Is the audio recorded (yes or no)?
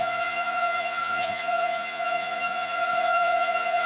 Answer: no